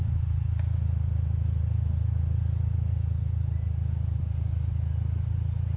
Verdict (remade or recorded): recorded